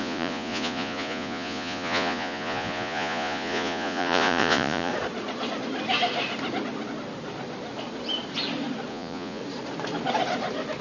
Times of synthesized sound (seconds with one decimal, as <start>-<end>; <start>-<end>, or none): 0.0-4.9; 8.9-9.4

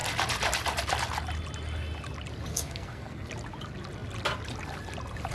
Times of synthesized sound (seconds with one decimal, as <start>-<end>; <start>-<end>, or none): 2.5-3.3

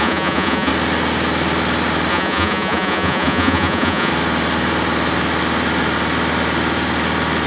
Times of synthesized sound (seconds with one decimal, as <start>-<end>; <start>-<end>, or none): 0.0-0.7; 2.1-4.1

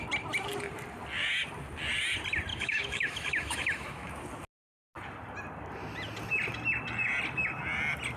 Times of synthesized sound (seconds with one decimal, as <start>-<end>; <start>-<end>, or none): 2.5-4.1

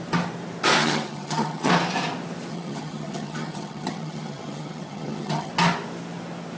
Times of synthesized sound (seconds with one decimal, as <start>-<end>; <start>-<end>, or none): 0.8-1.7; 2.5-5.5